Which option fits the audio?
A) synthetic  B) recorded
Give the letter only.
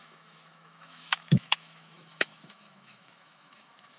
A